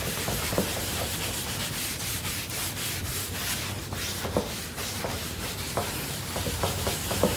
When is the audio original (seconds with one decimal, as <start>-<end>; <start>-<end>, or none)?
3.1-4.7